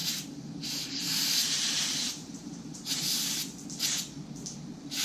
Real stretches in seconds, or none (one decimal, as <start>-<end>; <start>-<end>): 3.0-5.0